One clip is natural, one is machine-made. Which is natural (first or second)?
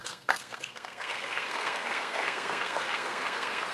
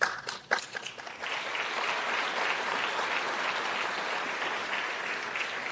second